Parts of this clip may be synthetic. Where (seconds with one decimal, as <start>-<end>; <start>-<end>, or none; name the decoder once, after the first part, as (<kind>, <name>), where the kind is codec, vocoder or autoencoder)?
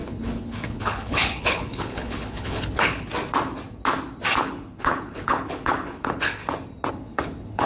0.0-3.1 (codec, HILCodec); 4.4-6.4; 6.9-7.7